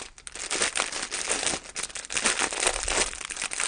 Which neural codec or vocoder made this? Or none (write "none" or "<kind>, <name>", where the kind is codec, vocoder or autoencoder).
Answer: none